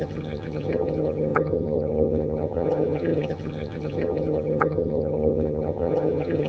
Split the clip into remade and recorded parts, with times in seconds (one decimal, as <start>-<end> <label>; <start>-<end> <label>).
0.0-6.5 remade